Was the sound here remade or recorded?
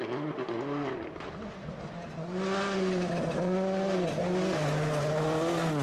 recorded